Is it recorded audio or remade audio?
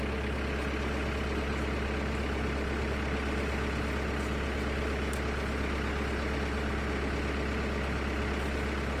recorded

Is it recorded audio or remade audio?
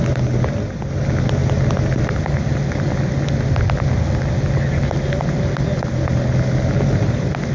recorded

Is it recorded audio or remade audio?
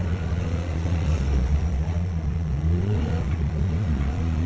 remade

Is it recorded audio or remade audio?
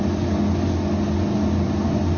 recorded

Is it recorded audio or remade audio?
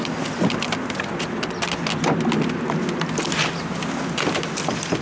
recorded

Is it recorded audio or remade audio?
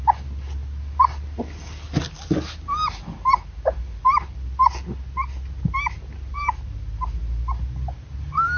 recorded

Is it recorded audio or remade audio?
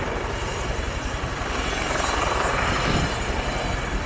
recorded